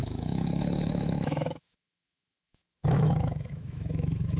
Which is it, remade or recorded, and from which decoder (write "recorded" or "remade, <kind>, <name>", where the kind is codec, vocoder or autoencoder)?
remade, autoencoder, DAC-VAE